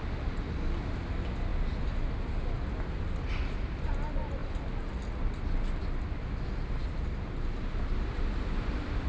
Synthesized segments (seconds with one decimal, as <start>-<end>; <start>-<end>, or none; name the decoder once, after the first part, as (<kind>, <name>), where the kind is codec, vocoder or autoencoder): none